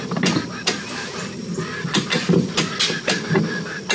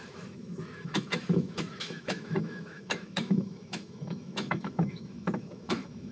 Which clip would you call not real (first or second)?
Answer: second